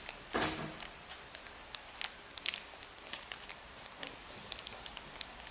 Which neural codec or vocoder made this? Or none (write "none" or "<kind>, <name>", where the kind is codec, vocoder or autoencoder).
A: none